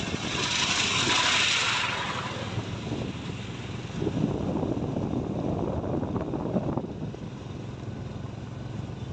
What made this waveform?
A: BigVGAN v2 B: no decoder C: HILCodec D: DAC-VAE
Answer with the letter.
B